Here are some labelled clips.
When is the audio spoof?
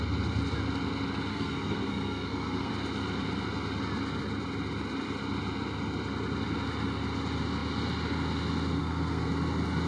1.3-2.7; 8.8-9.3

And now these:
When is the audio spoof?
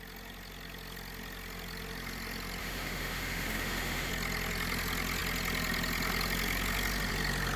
2.6-4.1